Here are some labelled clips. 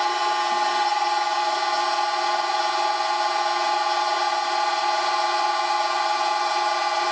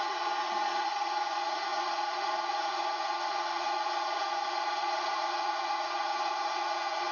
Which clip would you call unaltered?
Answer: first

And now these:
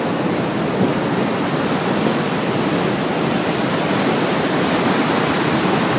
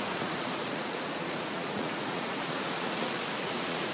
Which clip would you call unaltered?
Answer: first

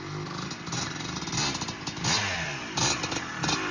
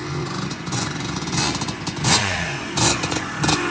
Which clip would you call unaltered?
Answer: first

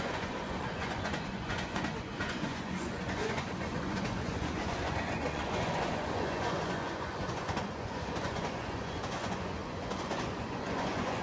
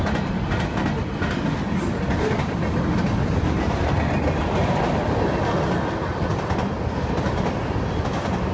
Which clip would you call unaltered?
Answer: second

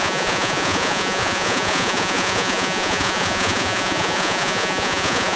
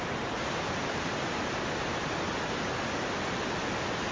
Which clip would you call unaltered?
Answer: second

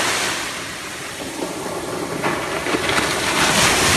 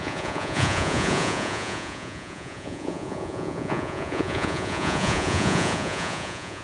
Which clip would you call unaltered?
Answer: first